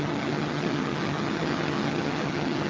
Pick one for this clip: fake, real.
fake